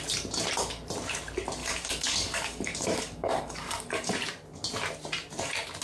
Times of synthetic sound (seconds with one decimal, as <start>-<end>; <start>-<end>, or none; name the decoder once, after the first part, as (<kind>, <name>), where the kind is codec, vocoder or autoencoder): 1.6-4.1 (codec, DAC)